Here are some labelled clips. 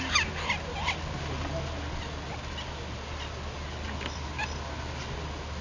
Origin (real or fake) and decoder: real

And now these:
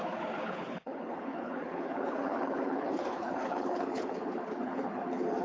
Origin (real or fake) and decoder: fake, codec, HILCodec